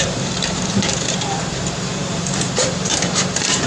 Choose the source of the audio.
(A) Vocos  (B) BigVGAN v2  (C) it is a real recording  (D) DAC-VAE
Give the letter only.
B